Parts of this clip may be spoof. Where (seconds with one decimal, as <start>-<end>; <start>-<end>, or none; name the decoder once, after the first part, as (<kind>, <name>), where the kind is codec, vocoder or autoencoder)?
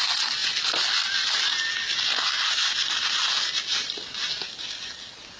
none